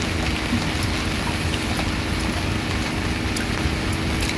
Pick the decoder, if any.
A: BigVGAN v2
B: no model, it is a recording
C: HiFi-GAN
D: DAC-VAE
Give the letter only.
B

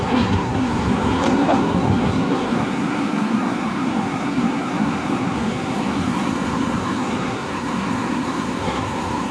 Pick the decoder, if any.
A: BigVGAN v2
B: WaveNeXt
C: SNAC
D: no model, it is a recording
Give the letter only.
C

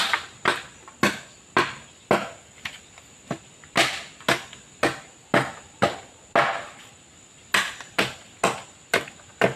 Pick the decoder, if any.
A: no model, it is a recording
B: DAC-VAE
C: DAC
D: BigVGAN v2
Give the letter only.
A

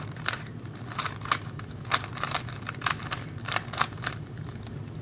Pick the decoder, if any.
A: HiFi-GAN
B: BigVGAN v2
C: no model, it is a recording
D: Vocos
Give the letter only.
B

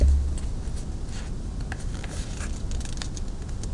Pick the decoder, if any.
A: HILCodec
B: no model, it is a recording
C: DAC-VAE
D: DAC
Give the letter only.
B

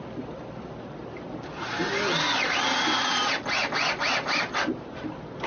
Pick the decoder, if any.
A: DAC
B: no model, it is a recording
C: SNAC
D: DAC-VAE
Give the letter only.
B